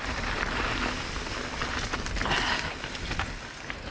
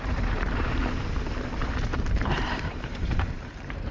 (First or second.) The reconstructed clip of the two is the second